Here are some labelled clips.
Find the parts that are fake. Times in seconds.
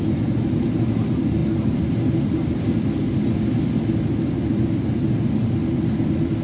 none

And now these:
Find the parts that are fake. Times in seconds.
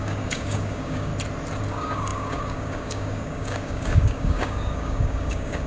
0.0-1.1 (codec, DAC); 1.7-5.7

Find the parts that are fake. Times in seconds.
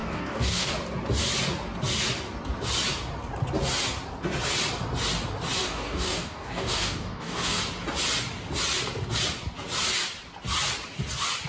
0.0-0.7 (codec, DAC); 5.6-7.6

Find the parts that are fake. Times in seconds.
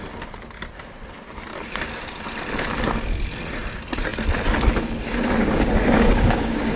5.4-6.8 (codec, DAC)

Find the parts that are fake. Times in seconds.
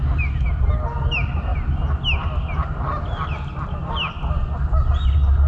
none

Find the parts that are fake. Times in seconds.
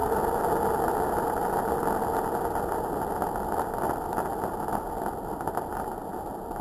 none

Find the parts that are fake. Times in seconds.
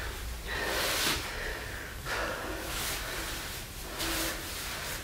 1.5-2.9 (codec, DAC)